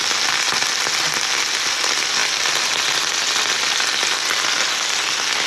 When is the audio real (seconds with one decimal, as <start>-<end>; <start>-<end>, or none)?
0.0-5.5